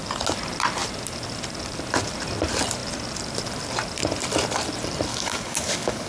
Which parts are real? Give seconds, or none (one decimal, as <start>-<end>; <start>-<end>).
0.0-5.1